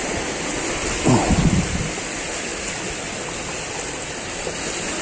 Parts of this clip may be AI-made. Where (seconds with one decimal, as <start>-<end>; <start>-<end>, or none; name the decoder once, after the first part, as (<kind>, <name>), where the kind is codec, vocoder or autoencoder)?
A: none